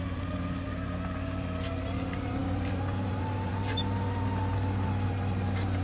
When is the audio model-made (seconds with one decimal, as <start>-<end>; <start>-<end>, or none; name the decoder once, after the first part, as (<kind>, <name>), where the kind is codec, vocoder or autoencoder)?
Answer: none